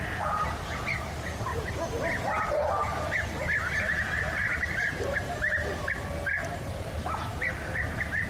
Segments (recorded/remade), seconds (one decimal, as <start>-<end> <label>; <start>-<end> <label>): 0.0-1.5 remade; 1.5-3.8 recorded; 3.8-5.6 remade; 5.6-6.3 recorded; 6.3-8.3 remade